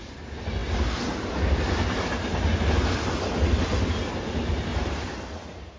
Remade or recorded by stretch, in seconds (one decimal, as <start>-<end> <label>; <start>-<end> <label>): 0.0-5.8 recorded